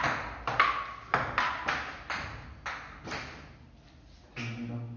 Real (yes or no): yes